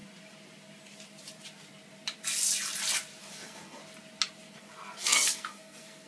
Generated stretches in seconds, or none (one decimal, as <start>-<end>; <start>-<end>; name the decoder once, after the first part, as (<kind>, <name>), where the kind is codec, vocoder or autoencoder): 3.2-3.8 (codec, SNAC); 4.5-6.1